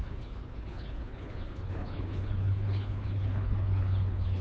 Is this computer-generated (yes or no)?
yes